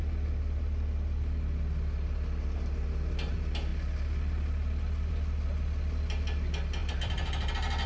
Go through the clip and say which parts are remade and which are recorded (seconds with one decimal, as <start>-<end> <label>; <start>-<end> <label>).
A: 0.0-6.8 recorded; 6.8-7.5 remade; 7.5-7.9 recorded

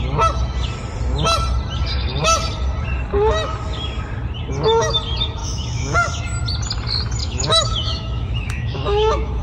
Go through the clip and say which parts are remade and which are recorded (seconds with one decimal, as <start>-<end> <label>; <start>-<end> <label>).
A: 0.0-5.4 recorded; 5.4-6.1 remade; 6.1-7.2 recorded; 7.2-9.4 remade

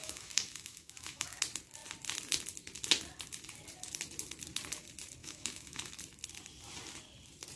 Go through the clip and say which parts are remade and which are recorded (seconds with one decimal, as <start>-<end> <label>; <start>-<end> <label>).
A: 0.0-1.4 remade; 1.4-5.2 recorded; 5.2-5.9 remade; 5.9-7.6 recorded

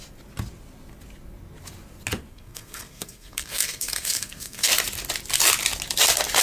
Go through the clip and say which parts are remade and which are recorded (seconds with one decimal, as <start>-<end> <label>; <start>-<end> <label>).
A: 0.0-2.3 recorded; 2.3-4.7 remade; 4.7-6.4 recorded

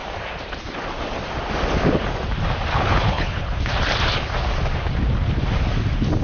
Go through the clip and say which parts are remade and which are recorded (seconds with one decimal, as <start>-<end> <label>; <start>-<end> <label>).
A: 0.0-2.7 recorded; 2.7-3.6 remade; 3.6-6.2 recorded

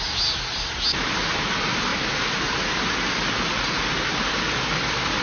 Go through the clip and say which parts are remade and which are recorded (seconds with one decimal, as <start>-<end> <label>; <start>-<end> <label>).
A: 0.0-5.2 recorded

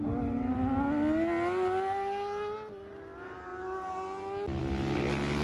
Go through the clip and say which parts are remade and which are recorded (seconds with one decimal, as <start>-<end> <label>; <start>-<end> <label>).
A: 0.0-5.4 recorded